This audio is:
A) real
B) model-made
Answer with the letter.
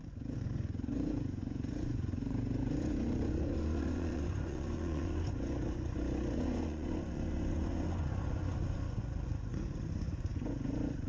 B